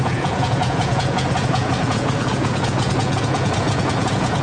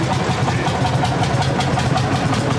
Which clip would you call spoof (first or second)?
first